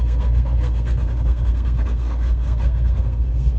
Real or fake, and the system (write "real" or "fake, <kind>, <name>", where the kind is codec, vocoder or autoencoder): fake, codec, SNAC